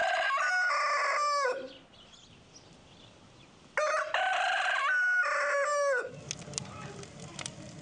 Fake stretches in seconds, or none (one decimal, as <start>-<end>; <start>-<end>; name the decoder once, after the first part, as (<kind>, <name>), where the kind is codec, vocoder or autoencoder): none